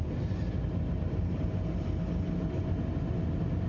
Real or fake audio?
real